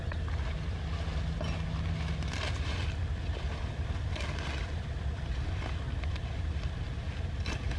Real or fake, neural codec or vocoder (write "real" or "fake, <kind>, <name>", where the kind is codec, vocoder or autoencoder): real